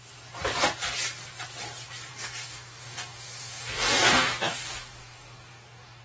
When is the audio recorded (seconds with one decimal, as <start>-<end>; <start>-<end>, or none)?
0.0-2.1